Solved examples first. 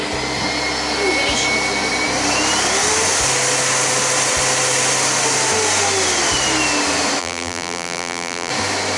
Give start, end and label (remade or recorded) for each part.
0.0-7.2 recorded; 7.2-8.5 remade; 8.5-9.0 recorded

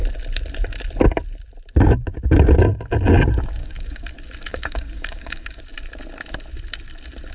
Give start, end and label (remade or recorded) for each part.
0.0-3.6 recorded; 3.6-4.1 remade; 4.1-4.5 recorded; 4.5-5.6 remade; 5.6-7.3 recorded

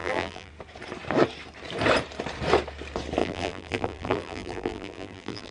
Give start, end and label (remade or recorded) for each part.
0.0-0.5 remade; 0.5-3.2 recorded; 3.2-5.5 remade

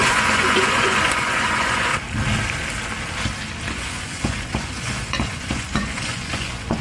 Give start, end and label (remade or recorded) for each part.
0.0-1.9 remade; 1.9-3.7 recorded; 3.7-6.8 remade